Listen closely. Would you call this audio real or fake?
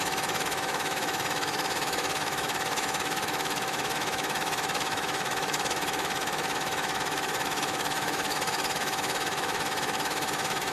fake